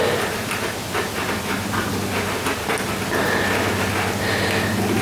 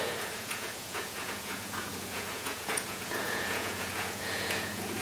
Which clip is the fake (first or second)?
second